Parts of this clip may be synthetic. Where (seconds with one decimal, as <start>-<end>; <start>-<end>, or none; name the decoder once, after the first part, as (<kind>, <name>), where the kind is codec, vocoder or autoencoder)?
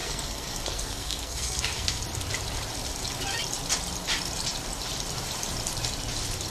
0.0-2.0 (codec, SNAC)